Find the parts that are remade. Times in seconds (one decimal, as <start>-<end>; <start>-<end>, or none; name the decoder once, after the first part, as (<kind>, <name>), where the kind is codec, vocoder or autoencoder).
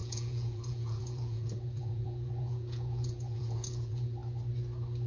0.0-4.2 (vocoder, Vocos)